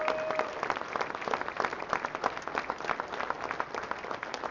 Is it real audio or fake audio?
real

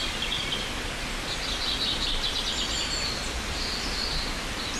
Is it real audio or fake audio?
real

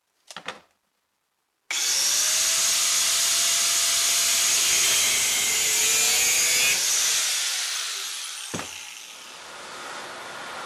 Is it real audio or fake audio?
real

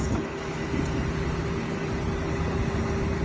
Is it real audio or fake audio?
real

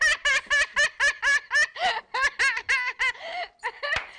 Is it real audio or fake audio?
real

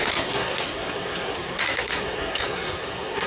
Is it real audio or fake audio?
fake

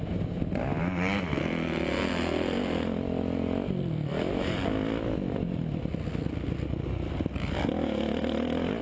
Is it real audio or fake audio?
real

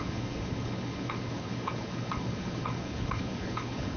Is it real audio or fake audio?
fake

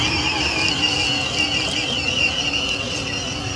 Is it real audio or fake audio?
real